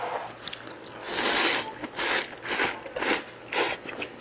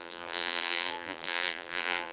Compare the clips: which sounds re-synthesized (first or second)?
second